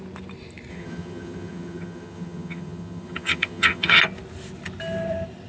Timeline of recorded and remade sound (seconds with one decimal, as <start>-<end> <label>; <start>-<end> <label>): 0.0-0.7 recorded; 0.7-4.0 remade; 4.0-5.5 recorded